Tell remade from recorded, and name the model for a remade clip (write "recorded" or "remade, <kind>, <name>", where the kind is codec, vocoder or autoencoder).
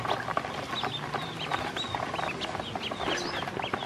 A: recorded